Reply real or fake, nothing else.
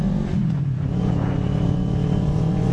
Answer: fake